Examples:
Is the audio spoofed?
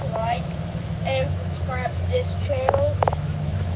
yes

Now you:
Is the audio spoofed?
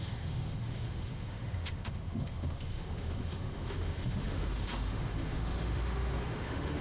yes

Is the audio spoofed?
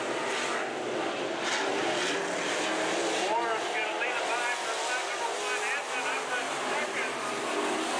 no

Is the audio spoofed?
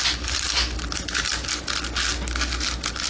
no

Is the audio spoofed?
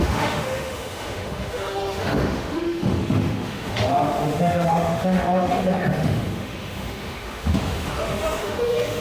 yes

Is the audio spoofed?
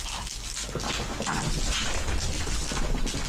no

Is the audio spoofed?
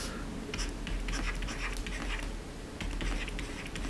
no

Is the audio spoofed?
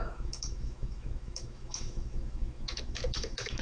yes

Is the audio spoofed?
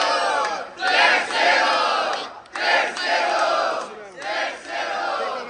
no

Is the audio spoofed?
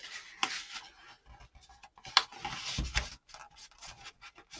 no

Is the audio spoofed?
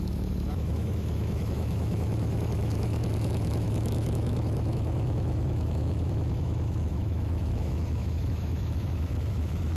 yes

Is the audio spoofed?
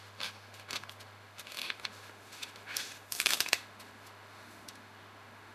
yes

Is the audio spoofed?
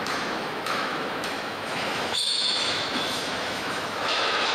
yes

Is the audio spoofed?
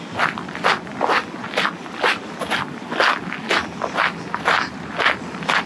no